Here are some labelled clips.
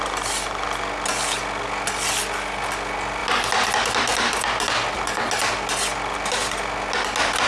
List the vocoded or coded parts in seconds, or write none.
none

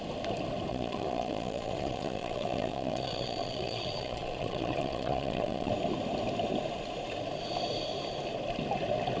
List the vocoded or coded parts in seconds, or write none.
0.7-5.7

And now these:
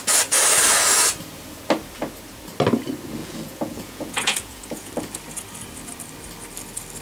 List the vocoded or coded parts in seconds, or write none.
3.2-4.9

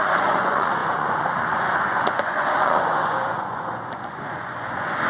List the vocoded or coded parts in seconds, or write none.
0.0-5.1

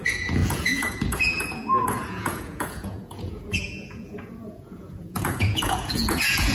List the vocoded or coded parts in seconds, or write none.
0.0-6.5

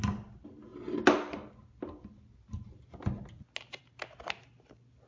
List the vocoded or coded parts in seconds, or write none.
none

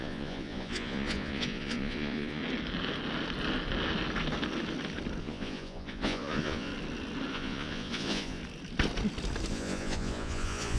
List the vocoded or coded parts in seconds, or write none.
0.0-2.4; 5.2-6.7; 7.3-8.4; 9.5-10.8